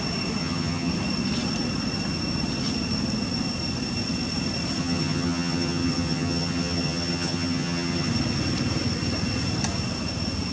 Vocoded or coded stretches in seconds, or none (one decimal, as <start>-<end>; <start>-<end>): 0.4-0.9; 4.8-8.1